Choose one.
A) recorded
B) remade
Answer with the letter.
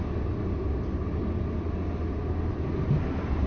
A